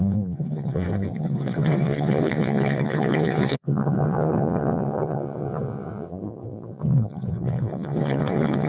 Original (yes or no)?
no